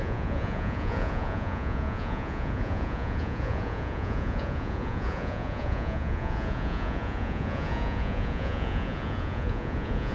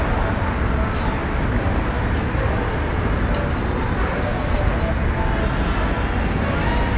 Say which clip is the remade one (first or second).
first